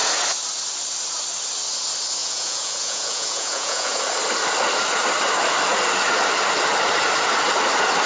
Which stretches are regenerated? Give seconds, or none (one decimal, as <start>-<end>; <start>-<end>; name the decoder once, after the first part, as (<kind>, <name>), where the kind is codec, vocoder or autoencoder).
2.2-4.0 (vocoder, Vocos)

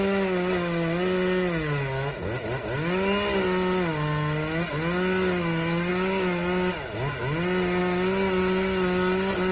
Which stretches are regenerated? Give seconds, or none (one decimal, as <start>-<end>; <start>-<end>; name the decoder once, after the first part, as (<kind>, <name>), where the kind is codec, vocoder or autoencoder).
none

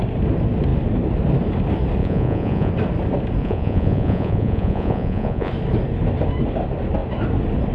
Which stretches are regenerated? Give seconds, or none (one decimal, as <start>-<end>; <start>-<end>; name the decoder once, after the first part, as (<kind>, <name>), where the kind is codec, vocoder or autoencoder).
2.0-2.7 (vocoder, Vocos); 3.4-5.5

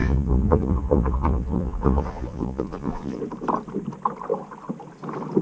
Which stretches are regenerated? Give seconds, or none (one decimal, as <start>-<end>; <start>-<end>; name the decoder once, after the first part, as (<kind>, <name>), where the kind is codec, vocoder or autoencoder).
0.0-3.2 (vocoder, Vocos)

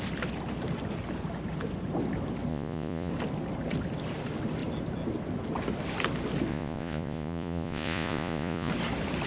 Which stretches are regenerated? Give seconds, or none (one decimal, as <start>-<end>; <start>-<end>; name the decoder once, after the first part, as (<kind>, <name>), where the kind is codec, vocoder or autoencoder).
2.5-3.1 (vocoder, Vocos); 6.5-8.7

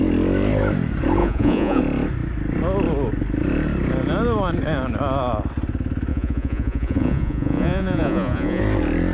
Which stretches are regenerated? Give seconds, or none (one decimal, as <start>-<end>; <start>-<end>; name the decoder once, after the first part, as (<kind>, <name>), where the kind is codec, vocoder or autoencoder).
1.2-1.8 (vocoder, Vocos); 6.1-8.6

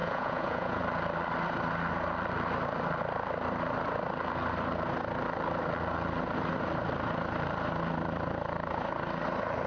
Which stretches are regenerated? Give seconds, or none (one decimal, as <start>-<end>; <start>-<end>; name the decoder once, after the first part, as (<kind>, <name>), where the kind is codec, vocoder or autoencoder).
0.0-0.8 (vocoder, Vocos)

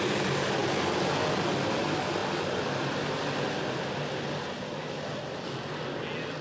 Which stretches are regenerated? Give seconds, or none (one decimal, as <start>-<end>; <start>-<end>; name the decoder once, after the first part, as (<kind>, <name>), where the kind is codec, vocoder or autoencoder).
none